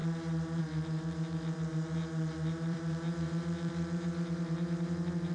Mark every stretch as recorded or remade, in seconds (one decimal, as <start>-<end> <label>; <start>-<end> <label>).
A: 0.0-5.3 remade